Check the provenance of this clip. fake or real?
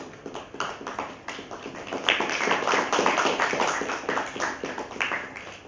real